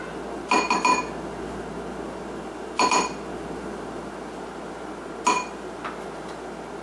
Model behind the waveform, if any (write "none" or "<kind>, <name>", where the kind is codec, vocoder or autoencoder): none